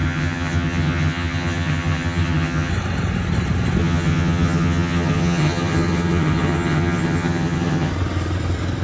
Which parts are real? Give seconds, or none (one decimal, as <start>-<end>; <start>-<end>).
2.7-3.8; 7.9-8.8